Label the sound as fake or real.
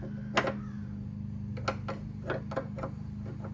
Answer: real